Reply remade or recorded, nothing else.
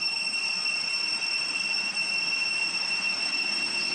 recorded